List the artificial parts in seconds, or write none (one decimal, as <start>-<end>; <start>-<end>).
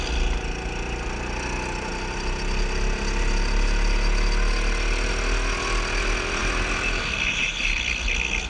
none